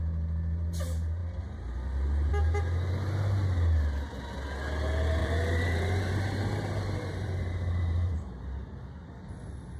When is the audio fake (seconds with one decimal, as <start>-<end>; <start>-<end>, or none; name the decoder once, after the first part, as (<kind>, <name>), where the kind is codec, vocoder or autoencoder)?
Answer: 5.2-8.4 (vocoder, BigVGAN v2)